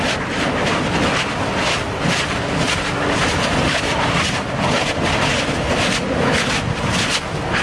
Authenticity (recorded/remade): recorded